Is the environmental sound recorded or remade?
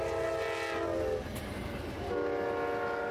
recorded